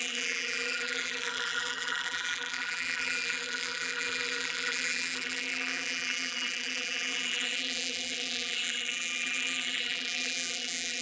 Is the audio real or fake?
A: fake